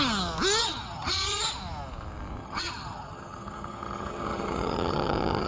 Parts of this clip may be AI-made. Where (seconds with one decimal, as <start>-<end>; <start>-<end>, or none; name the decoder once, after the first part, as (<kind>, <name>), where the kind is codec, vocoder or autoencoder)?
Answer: 0.6-1.6 (vocoder, HiFi-GAN); 2.4-5.5